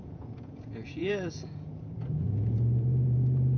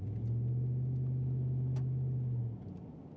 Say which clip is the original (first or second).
second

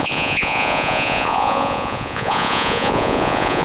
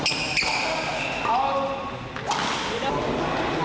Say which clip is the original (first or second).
second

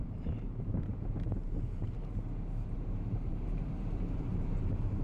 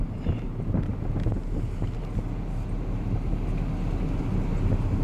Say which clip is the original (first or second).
second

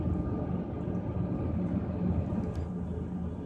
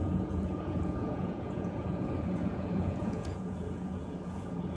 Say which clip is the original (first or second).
first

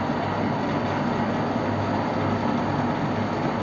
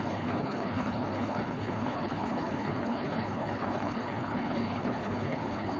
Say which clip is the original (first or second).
first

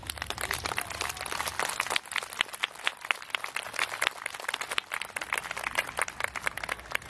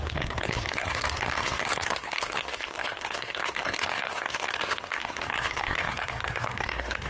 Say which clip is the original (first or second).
first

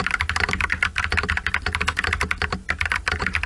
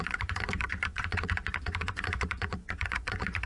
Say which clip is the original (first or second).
first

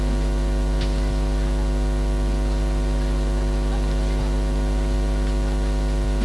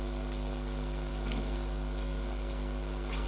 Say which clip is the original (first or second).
first